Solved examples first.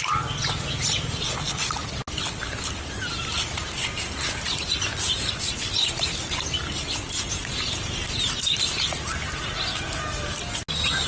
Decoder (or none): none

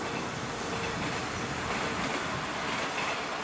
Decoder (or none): none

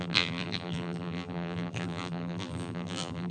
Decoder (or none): vocoder, BigVGAN v2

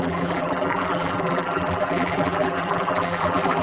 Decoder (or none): vocoder, BigVGAN v2